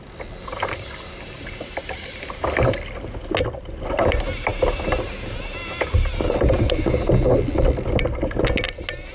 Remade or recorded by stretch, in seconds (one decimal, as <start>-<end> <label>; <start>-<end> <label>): 0.0-9.1 recorded